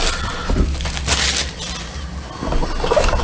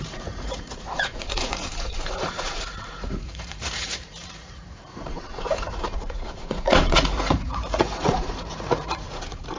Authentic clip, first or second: first